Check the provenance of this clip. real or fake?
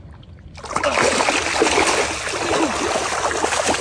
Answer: real